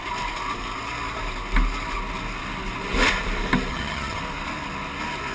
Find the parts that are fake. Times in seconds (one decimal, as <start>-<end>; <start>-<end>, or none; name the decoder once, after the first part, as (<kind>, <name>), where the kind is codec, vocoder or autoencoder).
3.7-4.2 (vocoder, HiFi-GAN)